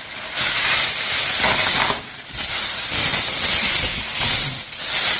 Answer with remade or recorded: recorded